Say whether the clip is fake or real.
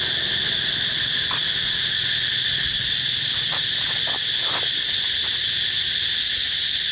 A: real